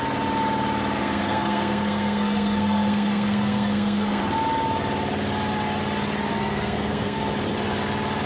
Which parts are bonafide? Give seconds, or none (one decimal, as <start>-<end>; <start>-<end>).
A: 0.0-1.0; 4.2-6.3; 7.2-8.3